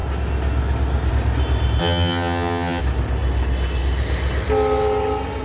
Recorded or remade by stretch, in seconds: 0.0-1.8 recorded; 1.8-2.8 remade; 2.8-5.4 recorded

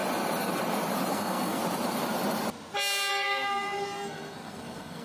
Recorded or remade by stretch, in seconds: 0.0-1.1 recorded; 1.1-1.6 remade; 1.6-3.1 recorded; 3.1-5.0 remade

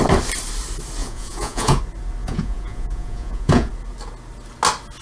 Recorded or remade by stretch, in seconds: 0.0-1.0 recorded; 1.0-1.8 remade; 1.8-2.2 recorded; 2.2-3.7 remade; 3.7-5.0 recorded

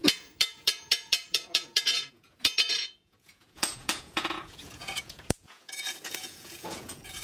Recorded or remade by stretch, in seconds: 0.0-7.2 remade

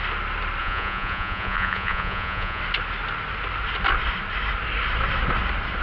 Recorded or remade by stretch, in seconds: 0.0-0.6 recorded; 0.6-2.6 remade; 2.6-5.8 recorded

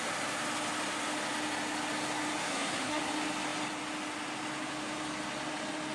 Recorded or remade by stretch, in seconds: 0.0-2.4 recorded; 2.4-3.0 remade; 3.0-5.9 recorded

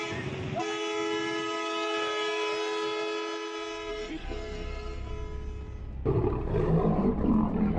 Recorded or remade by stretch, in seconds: 0.0-3.9 recorded; 3.9-5.1 remade; 5.1-7.8 recorded

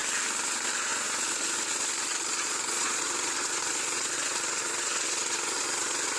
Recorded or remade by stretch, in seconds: 0.0-0.5 recorded; 0.5-6.2 remade